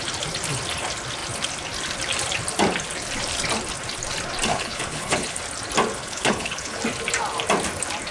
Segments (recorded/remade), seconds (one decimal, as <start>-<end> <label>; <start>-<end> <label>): 0.0-4.5 recorded; 4.5-5.4 remade; 5.4-6.0 recorded; 6.0-6.8 remade; 6.8-8.1 recorded